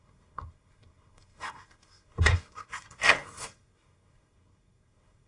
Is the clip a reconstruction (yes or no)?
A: yes